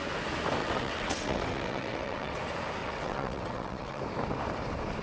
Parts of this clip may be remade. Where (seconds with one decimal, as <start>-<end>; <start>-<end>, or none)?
0.6-2.4; 2.8-4.0

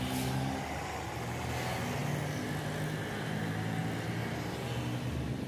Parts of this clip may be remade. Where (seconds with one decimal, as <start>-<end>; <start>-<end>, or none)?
none

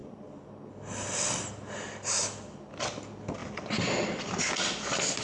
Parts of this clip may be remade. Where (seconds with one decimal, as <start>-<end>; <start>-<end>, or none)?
0.0-2.5; 3.4-4.5

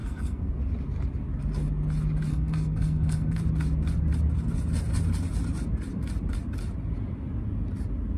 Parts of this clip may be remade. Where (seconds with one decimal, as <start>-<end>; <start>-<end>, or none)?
0.0-0.5; 2.3-3.4

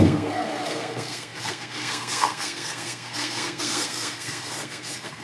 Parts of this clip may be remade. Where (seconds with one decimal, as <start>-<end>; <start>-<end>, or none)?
0.0-5.2